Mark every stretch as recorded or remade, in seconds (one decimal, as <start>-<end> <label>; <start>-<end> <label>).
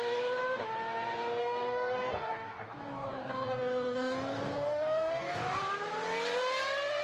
0.0-1.4 recorded; 1.4-5.6 remade; 5.6-7.0 recorded